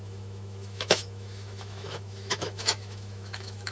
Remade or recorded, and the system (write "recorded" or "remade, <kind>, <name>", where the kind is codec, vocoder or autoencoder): remade, autoencoder, DAC-VAE